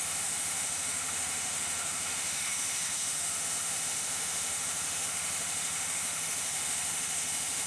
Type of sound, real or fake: fake